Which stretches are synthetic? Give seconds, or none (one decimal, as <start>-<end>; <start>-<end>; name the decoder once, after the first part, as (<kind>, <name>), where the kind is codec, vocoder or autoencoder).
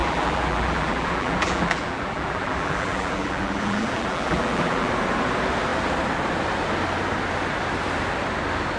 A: 0.0-4.9 (vocoder, BigVGAN v2)